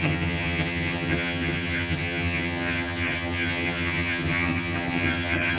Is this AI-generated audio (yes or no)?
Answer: yes